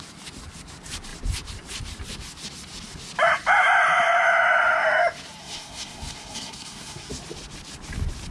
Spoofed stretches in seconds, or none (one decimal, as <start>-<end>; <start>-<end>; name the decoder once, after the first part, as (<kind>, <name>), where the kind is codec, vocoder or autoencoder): 5.4-7.1 (codec, SNAC)